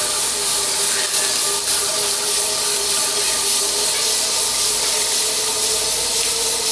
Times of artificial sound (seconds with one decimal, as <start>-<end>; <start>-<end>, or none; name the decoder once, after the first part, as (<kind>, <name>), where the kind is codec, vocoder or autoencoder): none